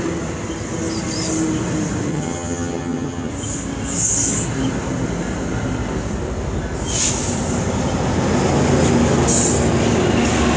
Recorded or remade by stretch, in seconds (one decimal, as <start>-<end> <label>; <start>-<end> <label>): 0.0-2.1 recorded; 2.1-3.3 remade; 3.3-10.6 recorded